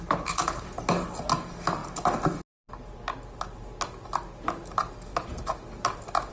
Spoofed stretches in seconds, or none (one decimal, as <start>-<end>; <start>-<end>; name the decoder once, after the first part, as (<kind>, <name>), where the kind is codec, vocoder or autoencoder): none